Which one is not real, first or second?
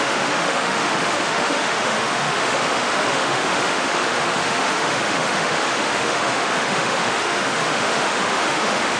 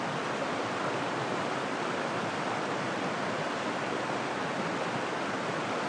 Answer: first